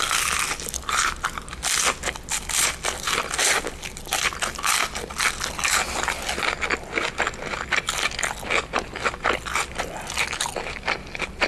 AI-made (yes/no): no